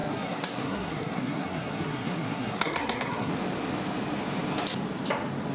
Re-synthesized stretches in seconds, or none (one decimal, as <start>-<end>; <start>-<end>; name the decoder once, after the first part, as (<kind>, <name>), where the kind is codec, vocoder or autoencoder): 0.0-3.3 (codec, SNAC)